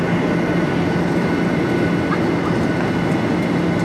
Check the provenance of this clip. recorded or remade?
recorded